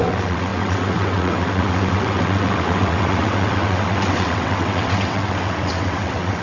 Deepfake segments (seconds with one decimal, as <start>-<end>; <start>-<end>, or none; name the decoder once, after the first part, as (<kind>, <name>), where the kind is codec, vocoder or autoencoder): 0.0-6.4 (vocoder, WaveNeXt)